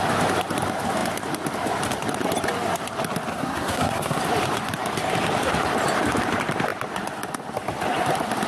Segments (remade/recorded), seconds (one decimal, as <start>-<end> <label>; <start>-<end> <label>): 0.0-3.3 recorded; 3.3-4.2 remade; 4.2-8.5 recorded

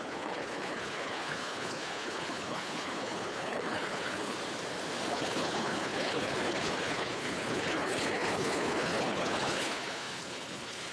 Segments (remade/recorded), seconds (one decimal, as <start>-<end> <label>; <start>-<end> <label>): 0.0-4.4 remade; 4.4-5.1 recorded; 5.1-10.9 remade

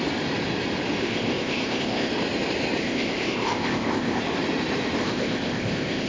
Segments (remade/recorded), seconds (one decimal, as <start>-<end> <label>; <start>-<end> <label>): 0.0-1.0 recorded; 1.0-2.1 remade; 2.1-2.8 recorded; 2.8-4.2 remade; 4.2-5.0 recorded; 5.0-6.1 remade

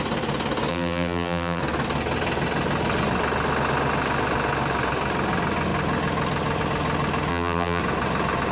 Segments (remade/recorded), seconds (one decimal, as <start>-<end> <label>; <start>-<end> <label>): 0.0-0.7 recorded; 0.7-1.6 remade; 1.6-7.3 recorded; 7.3-7.8 remade; 7.8-8.5 recorded

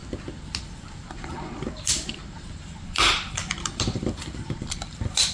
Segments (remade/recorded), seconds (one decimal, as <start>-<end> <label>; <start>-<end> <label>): 0.0-0.6 recorded; 0.6-5.3 remade

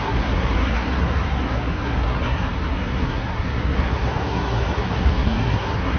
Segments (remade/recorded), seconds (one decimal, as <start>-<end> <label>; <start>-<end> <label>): 0.0-6.0 remade